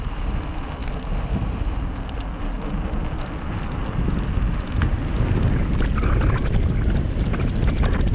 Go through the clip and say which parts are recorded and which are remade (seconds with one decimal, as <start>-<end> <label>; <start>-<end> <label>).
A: 0.0-8.1 recorded